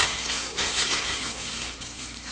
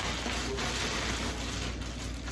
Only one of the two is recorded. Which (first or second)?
second